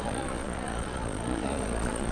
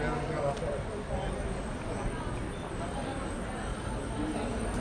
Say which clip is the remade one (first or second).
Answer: first